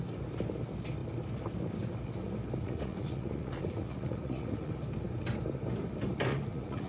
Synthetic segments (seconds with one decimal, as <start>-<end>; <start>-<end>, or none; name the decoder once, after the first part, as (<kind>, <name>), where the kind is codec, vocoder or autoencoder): 2.6-4.7 (vocoder, Vocos); 6.3-6.9